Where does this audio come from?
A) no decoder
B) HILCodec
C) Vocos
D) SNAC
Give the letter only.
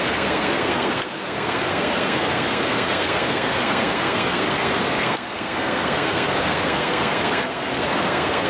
D